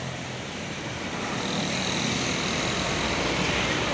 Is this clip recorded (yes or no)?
yes